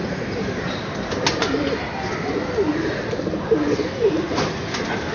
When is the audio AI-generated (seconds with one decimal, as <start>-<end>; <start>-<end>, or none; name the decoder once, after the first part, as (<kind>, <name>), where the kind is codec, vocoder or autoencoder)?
0.0-0.8 (vocoder, BigVGAN v2); 2.7-3.4